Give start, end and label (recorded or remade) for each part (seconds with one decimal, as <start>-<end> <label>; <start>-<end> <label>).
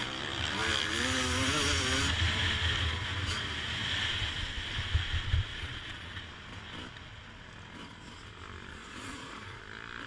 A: 0.0-5.5 recorded; 5.5-6.2 remade; 6.2-8.7 recorded; 8.7-9.6 remade; 9.6-10.1 recorded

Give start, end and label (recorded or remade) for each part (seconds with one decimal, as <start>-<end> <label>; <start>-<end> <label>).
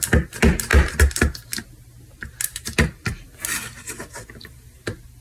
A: 0.0-5.2 recorded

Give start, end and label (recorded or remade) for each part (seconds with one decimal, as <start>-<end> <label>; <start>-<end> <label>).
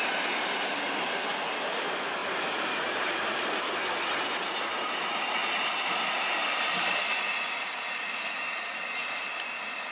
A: 0.0-9.9 recorded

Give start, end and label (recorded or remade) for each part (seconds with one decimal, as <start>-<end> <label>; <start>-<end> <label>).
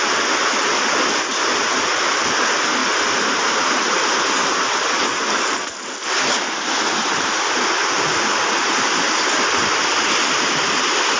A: 0.0-11.2 recorded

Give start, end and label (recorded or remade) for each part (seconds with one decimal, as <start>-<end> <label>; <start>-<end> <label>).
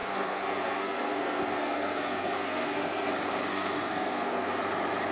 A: 0.0-3.1 remade; 3.1-3.5 recorded; 3.5-4.6 remade; 4.6-5.1 recorded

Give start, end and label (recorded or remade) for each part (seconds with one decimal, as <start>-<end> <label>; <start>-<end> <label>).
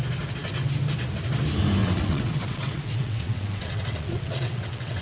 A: 0.0-1.8 recorded; 1.8-5.0 remade